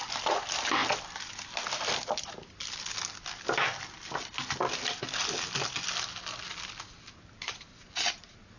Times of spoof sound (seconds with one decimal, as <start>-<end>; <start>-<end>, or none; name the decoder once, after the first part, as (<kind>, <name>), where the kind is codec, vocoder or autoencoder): 0.8-1.3 (vocoder, BigVGAN v2)

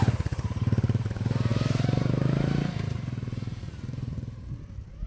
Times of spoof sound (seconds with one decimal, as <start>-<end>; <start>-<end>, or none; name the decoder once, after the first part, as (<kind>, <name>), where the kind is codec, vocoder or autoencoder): 0.0-5.1 (vocoder, BigVGAN v2)